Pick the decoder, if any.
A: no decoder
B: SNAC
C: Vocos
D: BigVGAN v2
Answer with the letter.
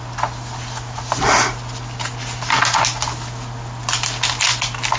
A